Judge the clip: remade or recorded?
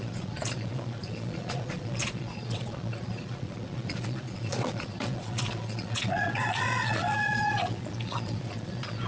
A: remade